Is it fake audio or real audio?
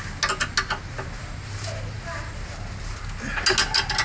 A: real